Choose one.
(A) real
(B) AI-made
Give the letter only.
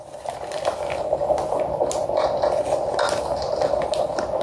A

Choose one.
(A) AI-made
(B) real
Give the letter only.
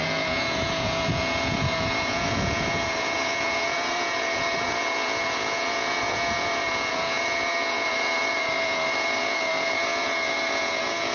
A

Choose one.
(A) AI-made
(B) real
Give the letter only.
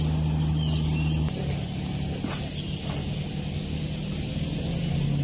B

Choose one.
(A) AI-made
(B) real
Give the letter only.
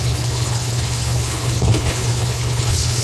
A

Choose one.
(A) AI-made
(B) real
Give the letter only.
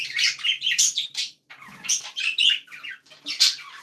B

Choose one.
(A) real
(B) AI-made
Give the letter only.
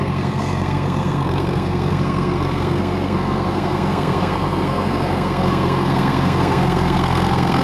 B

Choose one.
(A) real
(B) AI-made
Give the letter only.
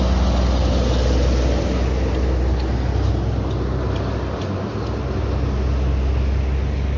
A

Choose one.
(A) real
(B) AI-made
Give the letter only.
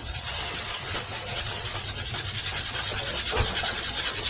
B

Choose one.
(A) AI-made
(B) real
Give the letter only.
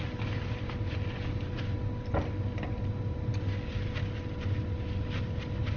B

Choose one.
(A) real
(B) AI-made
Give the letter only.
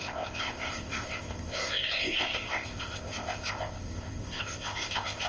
B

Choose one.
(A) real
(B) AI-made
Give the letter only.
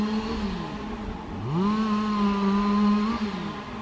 A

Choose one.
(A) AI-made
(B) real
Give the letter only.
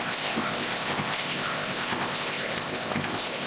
A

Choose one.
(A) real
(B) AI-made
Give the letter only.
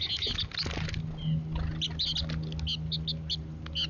A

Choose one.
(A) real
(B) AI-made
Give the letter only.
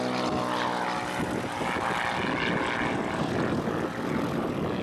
A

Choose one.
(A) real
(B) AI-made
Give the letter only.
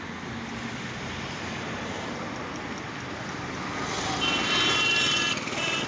A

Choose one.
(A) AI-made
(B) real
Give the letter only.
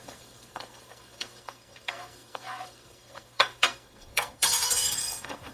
A